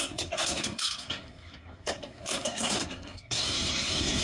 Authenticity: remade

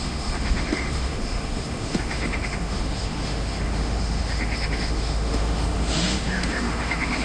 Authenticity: remade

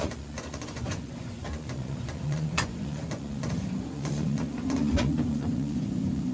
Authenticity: remade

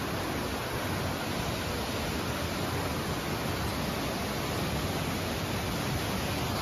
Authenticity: recorded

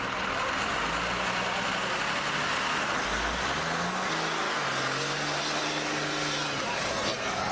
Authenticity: recorded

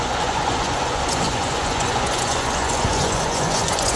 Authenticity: remade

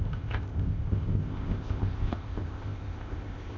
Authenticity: remade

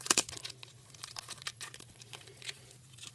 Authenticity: remade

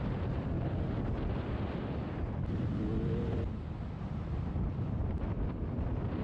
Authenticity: recorded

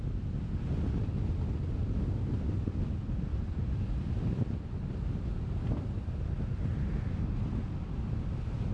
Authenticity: recorded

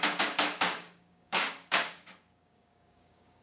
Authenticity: remade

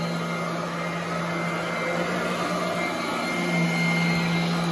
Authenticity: recorded